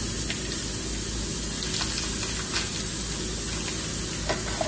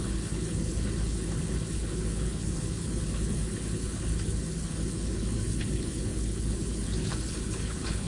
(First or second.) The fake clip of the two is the second